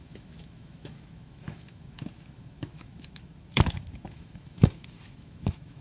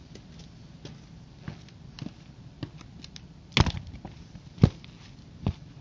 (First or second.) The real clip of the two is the second